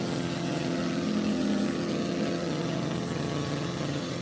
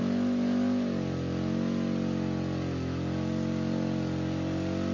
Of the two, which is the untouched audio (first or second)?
second